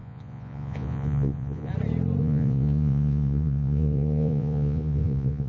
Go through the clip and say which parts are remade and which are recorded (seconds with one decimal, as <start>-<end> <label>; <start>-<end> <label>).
0.0-1.7 remade; 1.7-2.2 recorded; 2.2-5.5 remade